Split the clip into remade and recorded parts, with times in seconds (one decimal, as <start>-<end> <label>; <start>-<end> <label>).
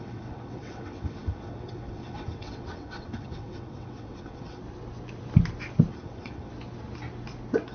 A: 0.0-4.6 remade; 4.6-5.9 recorded; 5.9-6.5 remade; 6.5-7.7 recorded